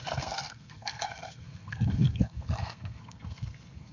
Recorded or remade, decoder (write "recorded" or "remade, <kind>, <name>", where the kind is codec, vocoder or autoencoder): remade, codec, SNAC